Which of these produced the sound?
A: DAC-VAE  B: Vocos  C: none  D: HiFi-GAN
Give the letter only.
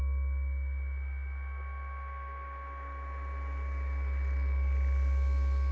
C